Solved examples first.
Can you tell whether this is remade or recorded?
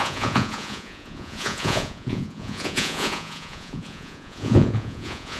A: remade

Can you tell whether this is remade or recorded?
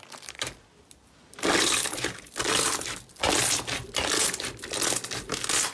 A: recorded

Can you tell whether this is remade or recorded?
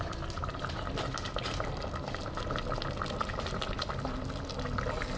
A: recorded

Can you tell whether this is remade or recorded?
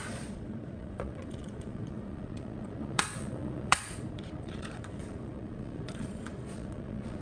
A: remade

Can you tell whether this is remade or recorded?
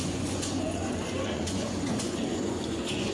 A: remade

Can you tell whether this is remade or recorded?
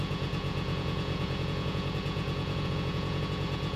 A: remade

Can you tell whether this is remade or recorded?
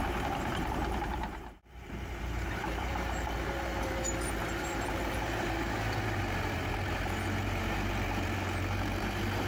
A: remade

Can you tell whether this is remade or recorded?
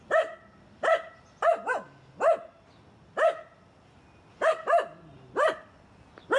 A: recorded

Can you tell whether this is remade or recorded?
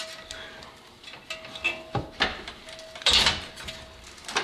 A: recorded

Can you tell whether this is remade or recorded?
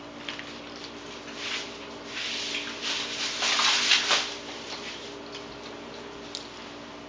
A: recorded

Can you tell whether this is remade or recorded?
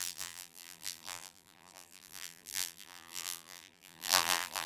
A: remade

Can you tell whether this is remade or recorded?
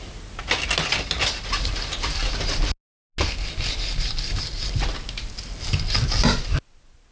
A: recorded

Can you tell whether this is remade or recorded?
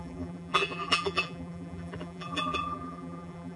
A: remade